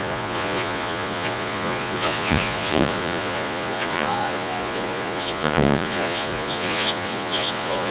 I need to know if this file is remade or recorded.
remade